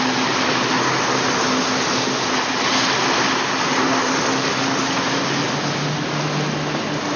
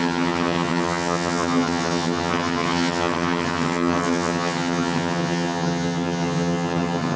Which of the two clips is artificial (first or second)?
second